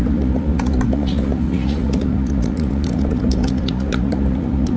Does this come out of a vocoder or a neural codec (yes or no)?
yes